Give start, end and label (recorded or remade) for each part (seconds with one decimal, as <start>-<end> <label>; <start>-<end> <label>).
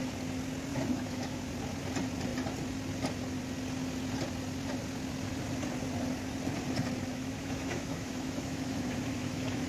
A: 0.0-0.7 recorded; 0.7-1.5 remade; 1.5-7.1 recorded; 7.1-9.7 remade